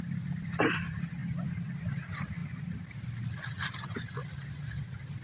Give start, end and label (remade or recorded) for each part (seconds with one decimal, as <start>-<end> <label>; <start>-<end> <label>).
0.0-5.2 remade